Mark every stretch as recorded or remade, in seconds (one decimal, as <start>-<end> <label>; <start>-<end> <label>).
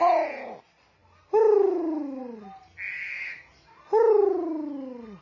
0.0-5.2 recorded